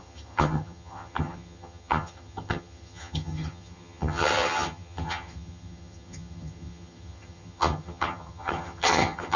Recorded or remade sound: remade